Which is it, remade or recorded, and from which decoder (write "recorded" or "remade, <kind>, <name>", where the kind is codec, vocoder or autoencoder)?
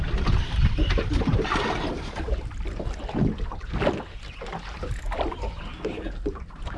recorded